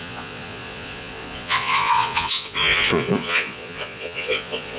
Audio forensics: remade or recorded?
remade